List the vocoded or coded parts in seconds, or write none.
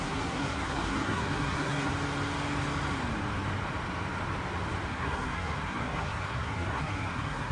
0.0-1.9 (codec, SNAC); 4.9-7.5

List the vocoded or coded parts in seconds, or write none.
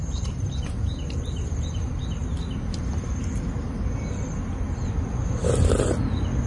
none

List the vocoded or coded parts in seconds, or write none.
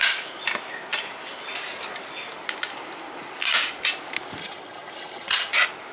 4.4-5.5 (vocoder, HiFi-GAN)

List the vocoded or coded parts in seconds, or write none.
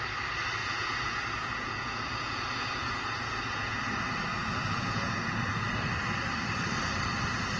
0.6-3.8 (vocoder, Vocos); 4.3-5.5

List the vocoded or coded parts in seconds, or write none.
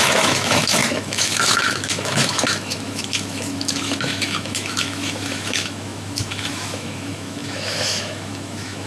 0.0-8.9 (autoencoder, DAC-VAE)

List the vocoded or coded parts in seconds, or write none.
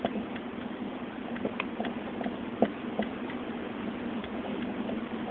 4.2-4.7 (codec, DAC)